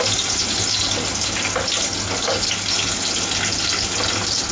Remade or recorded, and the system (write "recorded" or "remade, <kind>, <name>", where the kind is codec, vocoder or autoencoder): recorded